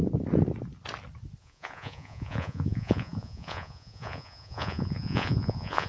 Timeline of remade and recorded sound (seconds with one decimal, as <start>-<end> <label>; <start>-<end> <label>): 0.0-1.4 recorded; 1.4-5.9 remade